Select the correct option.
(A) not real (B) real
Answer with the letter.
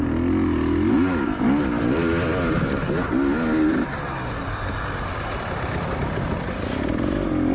B